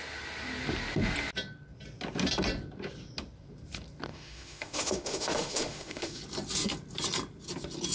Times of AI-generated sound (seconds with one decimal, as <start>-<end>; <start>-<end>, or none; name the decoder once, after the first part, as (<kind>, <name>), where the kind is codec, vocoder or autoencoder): 4.1-6.2 (autoencoder, DAC-VAE)